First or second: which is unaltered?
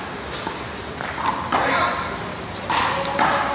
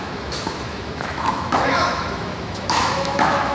first